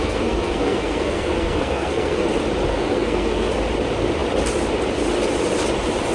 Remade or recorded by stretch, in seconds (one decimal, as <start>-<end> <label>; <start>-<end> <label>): 0.0-2.3 remade; 2.3-2.7 recorded; 2.7-3.5 remade; 3.5-6.1 recorded